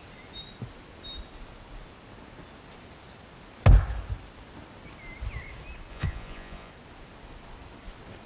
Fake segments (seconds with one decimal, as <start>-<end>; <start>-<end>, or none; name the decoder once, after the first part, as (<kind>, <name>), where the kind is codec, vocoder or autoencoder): 5.9-6.7 (vocoder, Vocos)